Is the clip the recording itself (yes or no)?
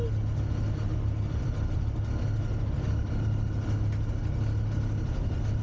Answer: yes